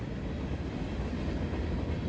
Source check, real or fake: real